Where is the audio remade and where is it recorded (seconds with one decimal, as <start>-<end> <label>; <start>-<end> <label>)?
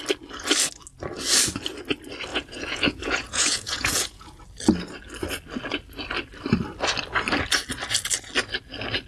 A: 0.0-2.3 recorded; 2.3-4.4 remade; 4.4-9.1 recorded